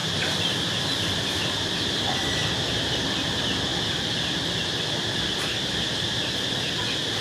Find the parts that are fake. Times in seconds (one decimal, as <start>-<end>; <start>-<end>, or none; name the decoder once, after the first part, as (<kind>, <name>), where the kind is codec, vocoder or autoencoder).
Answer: 0.0-1.7 (vocoder, BigVGAN v2); 3.7-4.2